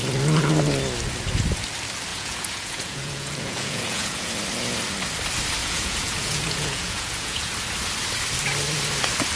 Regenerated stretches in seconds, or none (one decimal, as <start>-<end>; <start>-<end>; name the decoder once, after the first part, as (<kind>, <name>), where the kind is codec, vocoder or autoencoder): 2.1-4.3 (vocoder, Vocos); 5.6-7.5